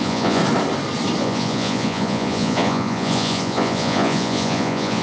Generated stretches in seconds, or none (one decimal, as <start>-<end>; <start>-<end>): 0.0-0.4; 1.2-5.0